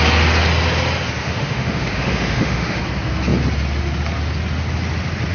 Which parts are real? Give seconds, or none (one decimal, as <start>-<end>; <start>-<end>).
0.0-1.2; 2.8-5.3

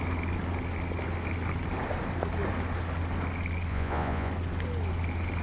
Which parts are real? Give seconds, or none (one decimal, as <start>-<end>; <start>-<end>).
0.0-3.7; 4.3-5.4